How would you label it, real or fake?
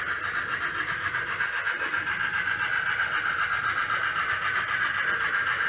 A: real